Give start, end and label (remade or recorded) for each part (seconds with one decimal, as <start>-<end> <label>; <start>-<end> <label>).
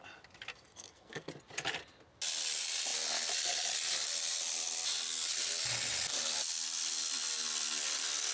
0.0-0.5 recorded; 0.5-1.3 remade; 1.3-8.3 recorded